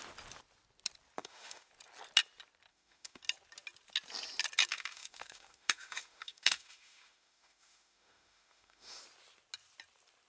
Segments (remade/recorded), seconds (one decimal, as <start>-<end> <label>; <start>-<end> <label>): 0.0-1.2 recorded; 1.2-1.7 remade; 1.7-2.7 recorded; 2.7-3.2 remade; 3.2-4.7 recorded; 4.7-9.0 remade; 9.0-10.3 recorded